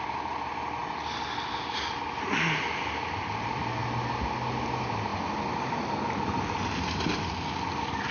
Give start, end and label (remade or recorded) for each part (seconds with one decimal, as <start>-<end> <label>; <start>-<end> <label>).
0.0-8.1 recorded